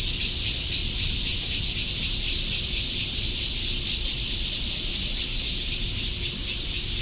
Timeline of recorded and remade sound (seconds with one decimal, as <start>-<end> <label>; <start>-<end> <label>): 0.0-7.0 recorded